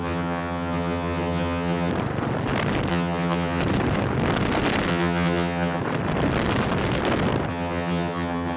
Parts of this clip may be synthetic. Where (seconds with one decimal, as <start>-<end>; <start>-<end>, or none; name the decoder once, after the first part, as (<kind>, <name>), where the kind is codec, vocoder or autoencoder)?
0.0-1.9 (vocoder, HiFi-GAN); 2.9-3.6; 4.9-5.8; 7.5-8.6

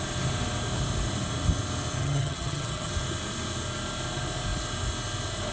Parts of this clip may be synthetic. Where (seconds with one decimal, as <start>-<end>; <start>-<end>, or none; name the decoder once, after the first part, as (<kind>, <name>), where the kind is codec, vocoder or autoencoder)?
2.0-2.9 (vocoder, HiFi-GAN)

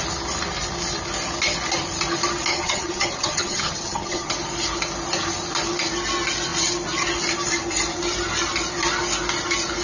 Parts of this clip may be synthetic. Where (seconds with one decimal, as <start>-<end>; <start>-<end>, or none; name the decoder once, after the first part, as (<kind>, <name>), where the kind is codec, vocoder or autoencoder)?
2.5-4.3 (vocoder, HiFi-GAN)

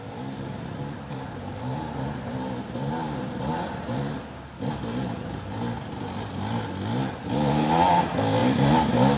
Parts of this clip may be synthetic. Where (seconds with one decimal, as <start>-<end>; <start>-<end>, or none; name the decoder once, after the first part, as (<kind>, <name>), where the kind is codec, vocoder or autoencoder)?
none

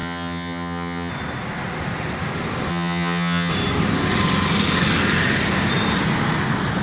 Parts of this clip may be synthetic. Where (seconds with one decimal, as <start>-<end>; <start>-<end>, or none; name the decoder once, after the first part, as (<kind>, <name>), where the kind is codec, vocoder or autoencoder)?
0.0-1.1 (vocoder, HiFi-GAN); 2.7-3.5

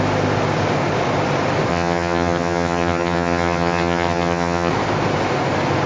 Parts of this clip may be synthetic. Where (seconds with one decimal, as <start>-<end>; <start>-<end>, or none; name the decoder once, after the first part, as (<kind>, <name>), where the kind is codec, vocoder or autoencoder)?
1.7-4.7 (vocoder, HiFi-GAN)